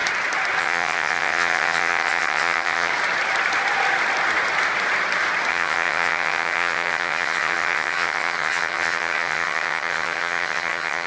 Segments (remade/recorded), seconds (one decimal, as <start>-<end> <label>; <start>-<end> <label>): 0.0-0.6 recorded; 0.6-2.9 remade; 2.9-5.5 recorded; 5.5-11.1 remade